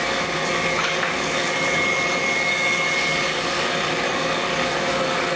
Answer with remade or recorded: remade